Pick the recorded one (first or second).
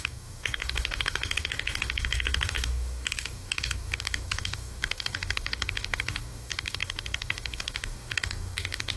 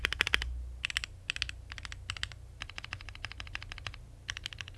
second